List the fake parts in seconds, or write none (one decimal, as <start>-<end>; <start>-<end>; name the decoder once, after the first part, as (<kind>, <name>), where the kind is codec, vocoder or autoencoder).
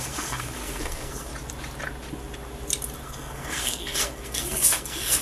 0.0-1.3 (codec, SNAC); 3.0-5.2